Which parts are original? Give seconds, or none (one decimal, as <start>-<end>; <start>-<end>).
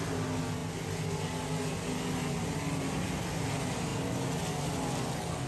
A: 0.0-5.5